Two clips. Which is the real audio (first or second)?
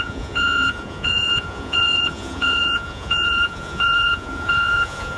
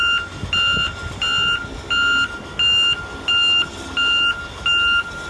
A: second